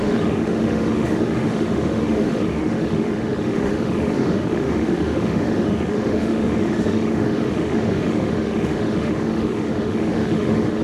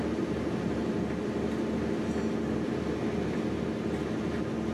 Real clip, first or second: second